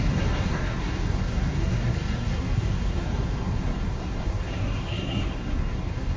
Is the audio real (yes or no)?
no